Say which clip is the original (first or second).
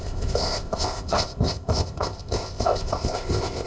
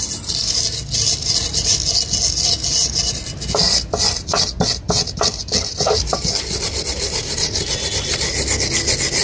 second